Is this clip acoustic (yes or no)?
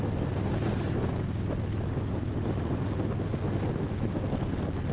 yes